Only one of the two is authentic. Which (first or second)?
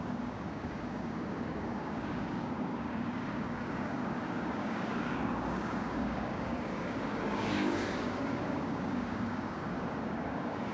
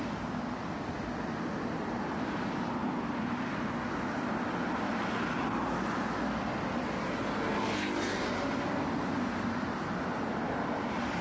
second